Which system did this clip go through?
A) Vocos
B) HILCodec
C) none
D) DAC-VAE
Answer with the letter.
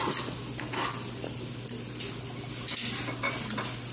C